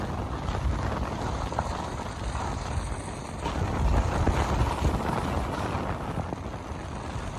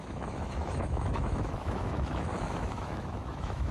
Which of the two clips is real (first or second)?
first